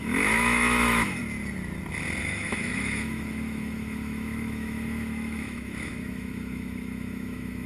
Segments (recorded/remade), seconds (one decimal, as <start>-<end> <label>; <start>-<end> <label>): 0.0-1.2 remade; 1.2-2.2 recorded; 2.2-7.7 remade